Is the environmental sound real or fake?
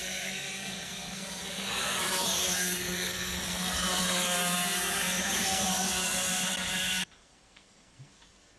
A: fake